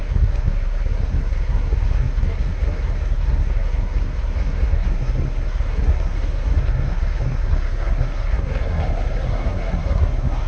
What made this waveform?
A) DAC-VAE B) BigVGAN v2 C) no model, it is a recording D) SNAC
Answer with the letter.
D